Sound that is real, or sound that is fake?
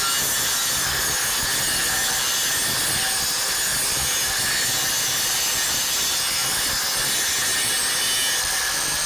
real